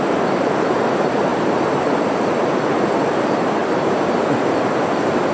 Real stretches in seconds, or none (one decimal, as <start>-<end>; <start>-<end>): 0.0-1.3; 2.3-3.6; 4.1-5.3